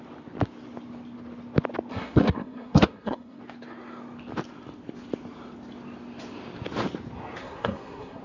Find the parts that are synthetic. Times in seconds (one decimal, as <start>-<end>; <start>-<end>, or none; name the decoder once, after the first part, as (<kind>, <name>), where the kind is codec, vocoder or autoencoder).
1.9-3.4 (codec, SNAC); 7.4-8.2